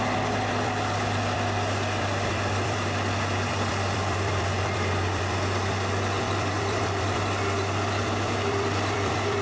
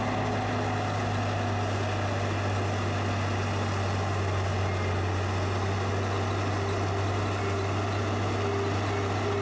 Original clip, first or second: second